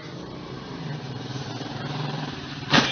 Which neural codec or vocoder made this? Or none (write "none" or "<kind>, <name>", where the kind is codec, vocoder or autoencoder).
vocoder, BigVGAN v2